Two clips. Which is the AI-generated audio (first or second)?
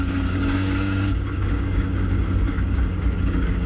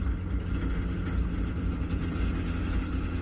first